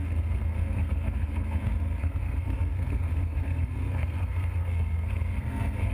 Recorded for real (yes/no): no